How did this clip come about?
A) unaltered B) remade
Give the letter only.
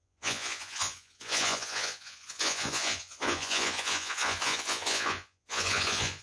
B